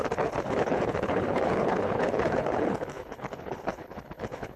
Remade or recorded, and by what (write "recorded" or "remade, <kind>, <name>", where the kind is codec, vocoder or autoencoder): remade, codec, HILCodec